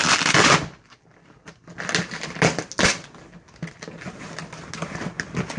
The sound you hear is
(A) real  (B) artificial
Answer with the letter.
A